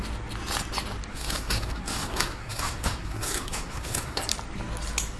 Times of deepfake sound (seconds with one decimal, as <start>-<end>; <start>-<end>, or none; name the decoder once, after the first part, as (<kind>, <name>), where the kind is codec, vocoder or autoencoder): 1.1-4.2 (codec, SNAC)